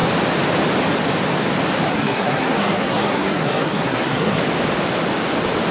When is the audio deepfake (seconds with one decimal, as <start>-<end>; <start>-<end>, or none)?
1.9-4.4